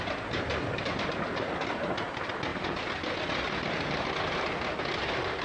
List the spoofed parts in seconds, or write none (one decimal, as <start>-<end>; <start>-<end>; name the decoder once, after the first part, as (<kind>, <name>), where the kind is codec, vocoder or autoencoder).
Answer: none